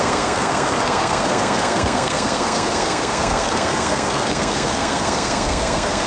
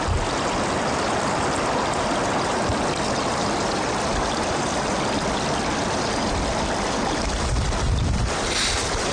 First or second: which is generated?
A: first